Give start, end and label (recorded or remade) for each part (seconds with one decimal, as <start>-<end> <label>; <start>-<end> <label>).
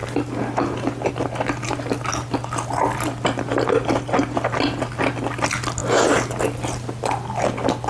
0.0-7.9 recorded